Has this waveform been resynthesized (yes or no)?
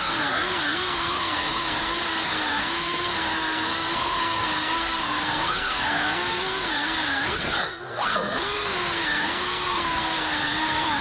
yes